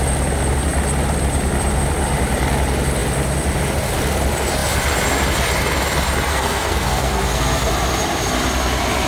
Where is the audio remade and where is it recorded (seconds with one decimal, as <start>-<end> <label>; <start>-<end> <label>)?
0.0-6.3 recorded; 6.3-7.7 remade; 7.7-9.1 recorded